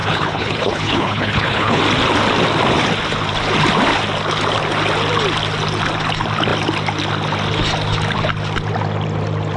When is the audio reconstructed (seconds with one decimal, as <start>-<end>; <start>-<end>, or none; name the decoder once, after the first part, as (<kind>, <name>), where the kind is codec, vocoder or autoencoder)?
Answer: 0.0-1.8 (codec, HILCodec)